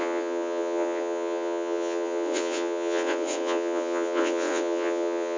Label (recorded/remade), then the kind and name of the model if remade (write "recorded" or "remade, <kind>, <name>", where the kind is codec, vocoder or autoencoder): remade, vocoder, WaveNeXt